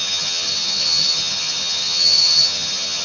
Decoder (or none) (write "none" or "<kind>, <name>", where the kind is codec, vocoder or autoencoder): vocoder, HiFi-GAN